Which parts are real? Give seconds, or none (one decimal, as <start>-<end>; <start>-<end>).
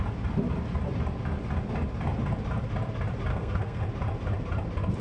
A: 0.0-3.3; 3.8-5.0